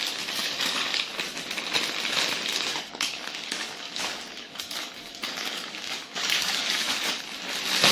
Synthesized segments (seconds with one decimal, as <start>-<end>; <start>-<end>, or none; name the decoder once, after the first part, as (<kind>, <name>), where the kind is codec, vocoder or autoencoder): 0.4-1.1 (codec, DAC); 2.5-7.2